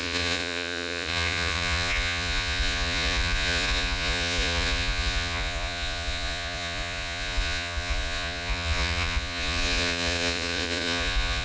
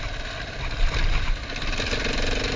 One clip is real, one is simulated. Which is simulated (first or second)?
first